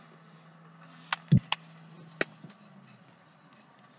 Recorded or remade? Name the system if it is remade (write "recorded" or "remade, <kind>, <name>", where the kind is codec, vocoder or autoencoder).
recorded